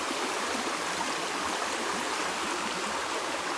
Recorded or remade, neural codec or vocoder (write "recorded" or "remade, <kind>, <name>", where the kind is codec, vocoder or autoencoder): recorded